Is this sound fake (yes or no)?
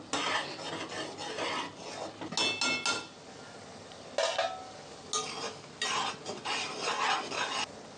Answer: no